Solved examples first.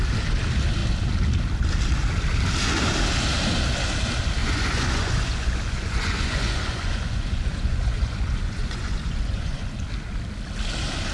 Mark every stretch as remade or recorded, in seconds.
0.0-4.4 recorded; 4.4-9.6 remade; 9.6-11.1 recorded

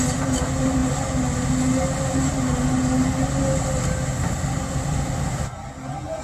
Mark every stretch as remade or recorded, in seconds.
0.0-6.2 recorded

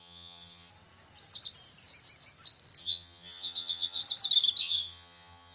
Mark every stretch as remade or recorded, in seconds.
0.0-0.7 remade; 0.7-2.8 recorded; 2.8-4.0 remade; 4.0-4.6 recorded; 4.6-5.5 remade